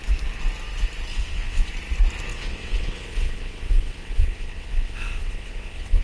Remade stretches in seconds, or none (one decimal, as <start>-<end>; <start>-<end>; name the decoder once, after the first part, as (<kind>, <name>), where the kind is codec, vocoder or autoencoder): 1.1-1.7 (vocoder, WaveNeXt); 2.3-6.0